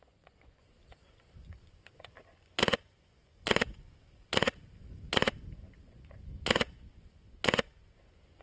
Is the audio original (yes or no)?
no